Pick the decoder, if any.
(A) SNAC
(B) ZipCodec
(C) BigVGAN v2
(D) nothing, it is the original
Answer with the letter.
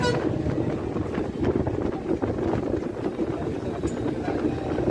D